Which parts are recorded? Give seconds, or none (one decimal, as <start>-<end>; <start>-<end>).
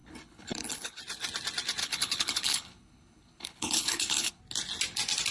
1.0-1.8; 4.4-5.3